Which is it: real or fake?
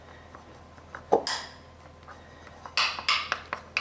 real